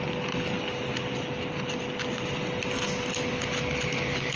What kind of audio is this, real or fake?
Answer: real